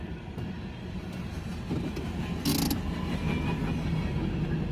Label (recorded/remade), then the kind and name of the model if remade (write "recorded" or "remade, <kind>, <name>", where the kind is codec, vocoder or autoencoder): recorded